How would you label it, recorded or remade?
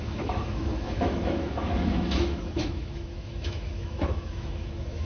remade